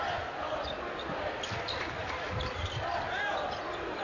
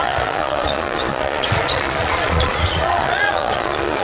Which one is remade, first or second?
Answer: second